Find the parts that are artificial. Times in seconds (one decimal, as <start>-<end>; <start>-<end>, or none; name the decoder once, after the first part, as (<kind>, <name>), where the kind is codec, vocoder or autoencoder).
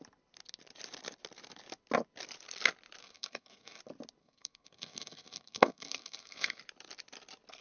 3.0-3.8 (codec, SNAC); 4.2-6.6